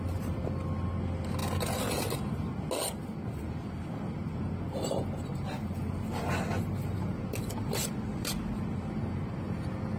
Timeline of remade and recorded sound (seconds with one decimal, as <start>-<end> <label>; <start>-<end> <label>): 0.0-10.0 recorded